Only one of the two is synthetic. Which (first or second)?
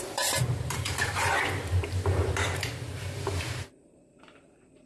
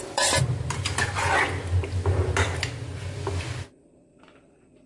first